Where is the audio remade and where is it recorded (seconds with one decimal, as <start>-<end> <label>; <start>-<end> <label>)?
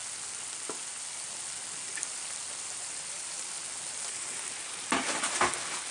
0.0-5.9 recorded